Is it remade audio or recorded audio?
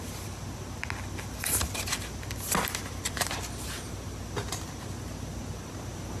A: recorded